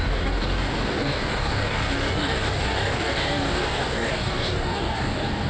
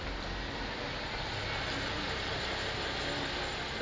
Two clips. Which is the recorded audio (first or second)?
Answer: second